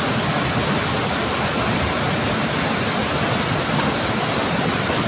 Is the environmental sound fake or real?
real